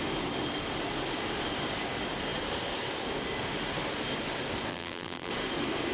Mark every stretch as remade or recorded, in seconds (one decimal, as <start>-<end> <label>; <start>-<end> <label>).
0.0-4.7 recorded; 4.7-5.3 remade; 5.3-5.9 recorded